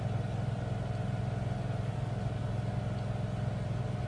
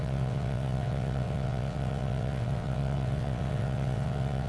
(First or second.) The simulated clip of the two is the second